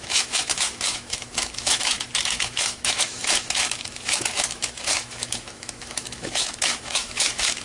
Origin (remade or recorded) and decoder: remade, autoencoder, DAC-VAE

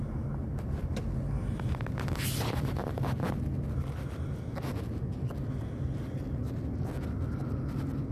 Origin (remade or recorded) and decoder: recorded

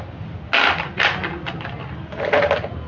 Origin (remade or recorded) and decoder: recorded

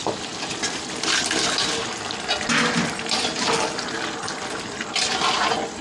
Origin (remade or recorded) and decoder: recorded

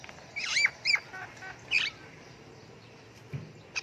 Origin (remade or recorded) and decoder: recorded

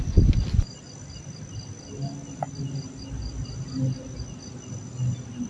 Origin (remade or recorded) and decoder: recorded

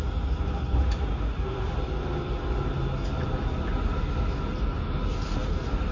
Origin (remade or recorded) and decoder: recorded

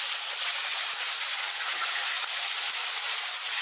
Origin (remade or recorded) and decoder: recorded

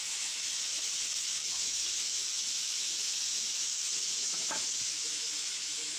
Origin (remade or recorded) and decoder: remade, autoencoder, DAC-VAE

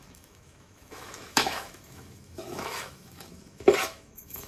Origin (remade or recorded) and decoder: remade, autoencoder, DAC-VAE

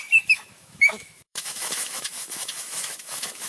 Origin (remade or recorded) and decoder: remade, autoencoder, DAC-VAE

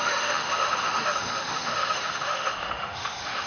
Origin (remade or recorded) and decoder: remade, autoencoder, DAC-VAE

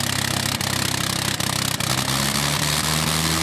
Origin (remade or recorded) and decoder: recorded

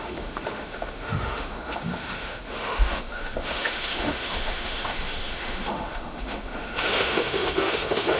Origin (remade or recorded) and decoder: remade, autoencoder, DAC-VAE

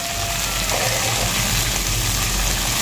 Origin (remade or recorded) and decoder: recorded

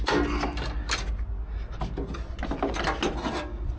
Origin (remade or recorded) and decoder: recorded